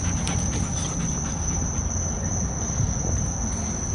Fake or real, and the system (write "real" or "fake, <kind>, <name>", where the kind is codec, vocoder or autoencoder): real